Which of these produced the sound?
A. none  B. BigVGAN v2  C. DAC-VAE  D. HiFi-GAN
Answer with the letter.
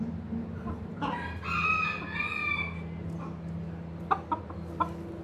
A